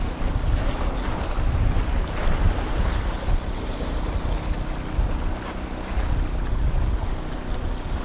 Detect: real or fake real